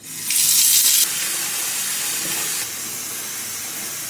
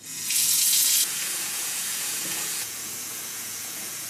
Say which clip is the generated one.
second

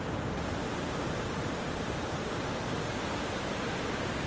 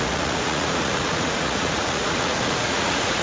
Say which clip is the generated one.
second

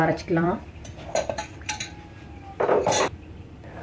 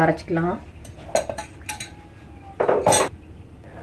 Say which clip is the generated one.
first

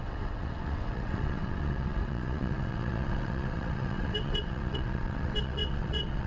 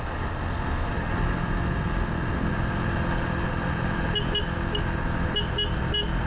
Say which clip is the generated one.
first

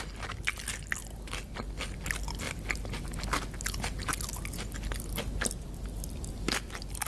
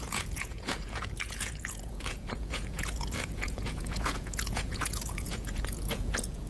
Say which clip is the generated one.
second